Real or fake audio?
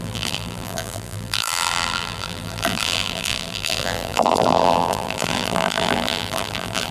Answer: fake